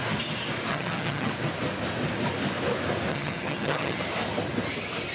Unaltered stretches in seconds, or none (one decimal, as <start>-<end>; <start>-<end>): 0.0-0.7; 1.3-3.1; 4.0-5.1